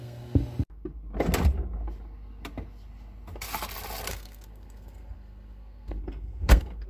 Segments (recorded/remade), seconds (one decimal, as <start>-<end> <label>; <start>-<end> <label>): 0.0-0.4 remade; 0.4-4.1 recorded; 4.1-6.9 remade